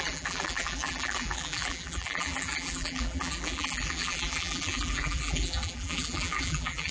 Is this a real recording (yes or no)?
no